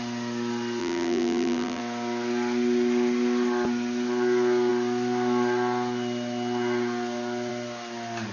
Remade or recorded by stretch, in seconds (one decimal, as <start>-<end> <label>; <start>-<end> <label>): 0.0-0.8 recorded; 0.8-1.8 remade; 1.8-8.3 recorded